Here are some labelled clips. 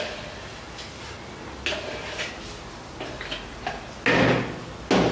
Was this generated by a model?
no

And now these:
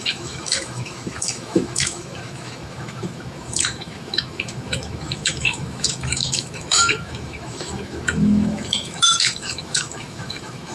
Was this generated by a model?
yes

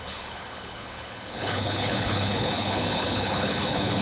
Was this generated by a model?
yes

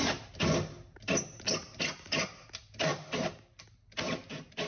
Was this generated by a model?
no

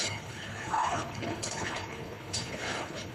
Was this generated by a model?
yes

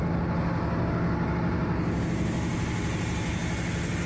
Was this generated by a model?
no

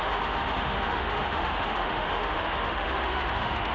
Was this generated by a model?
yes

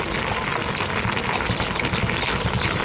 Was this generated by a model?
no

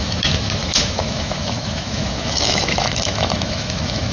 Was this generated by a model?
yes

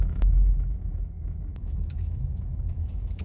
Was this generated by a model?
yes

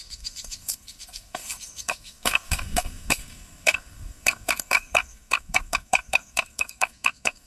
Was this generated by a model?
yes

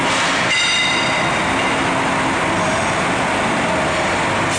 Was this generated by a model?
no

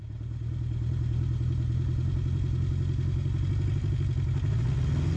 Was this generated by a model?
no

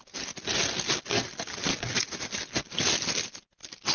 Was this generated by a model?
no